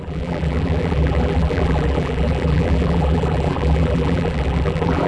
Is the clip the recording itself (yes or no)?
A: no